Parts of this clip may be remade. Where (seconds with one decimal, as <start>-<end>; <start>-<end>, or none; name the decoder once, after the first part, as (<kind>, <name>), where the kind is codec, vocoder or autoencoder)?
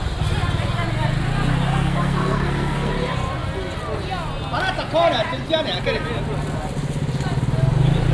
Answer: 1.7-2.9 (codec, SNAC)